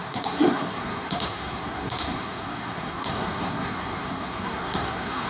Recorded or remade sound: remade